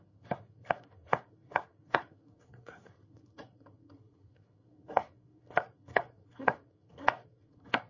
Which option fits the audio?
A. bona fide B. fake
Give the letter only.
B